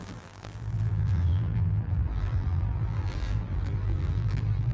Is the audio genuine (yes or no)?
no